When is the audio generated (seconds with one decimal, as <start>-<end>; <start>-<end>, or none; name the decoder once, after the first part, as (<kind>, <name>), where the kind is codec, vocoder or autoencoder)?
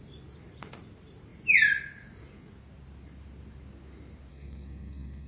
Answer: 4.3-5.3 (codec, SNAC)